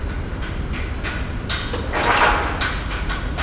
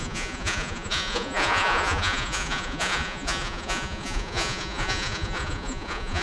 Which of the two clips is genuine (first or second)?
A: first